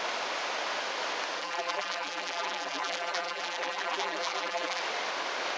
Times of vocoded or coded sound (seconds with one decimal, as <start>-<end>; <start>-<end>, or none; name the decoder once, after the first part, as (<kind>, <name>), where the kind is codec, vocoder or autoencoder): 1.4-4.8 (vocoder, BigVGAN v2)